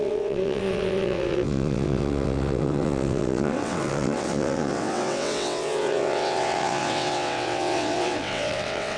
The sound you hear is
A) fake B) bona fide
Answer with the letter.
A